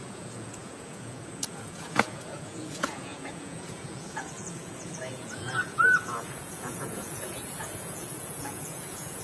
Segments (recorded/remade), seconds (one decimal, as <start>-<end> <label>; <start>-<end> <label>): 0.0-9.2 remade